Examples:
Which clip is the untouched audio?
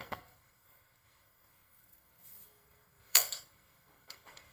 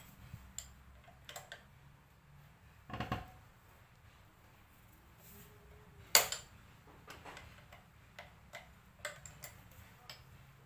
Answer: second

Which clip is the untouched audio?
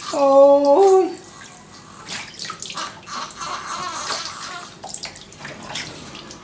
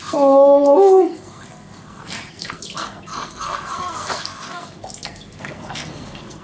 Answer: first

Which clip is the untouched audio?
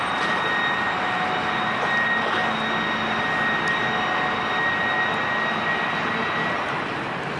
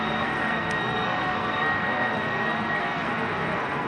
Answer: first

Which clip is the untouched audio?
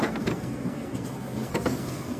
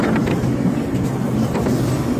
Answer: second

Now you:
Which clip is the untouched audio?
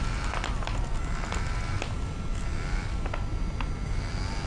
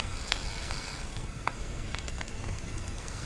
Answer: first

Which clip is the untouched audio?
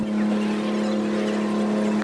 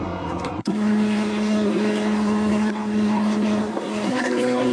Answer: first